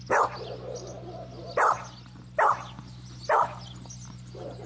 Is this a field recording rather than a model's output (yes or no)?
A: yes